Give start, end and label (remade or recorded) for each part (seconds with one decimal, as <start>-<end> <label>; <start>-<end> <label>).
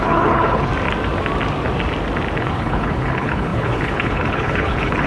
0.0-0.7 remade; 0.7-2.4 recorded; 2.4-5.1 remade